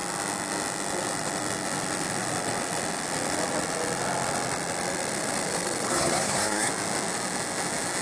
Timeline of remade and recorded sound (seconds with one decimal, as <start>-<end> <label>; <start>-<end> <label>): 0.0-5.9 recorded; 5.9-6.7 remade; 6.7-8.0 recorded